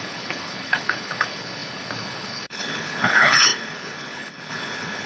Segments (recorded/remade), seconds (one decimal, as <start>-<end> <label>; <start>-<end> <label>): 0.0-5.1 remade